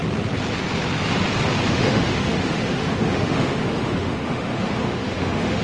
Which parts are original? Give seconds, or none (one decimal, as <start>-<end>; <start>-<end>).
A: 0.0-1.7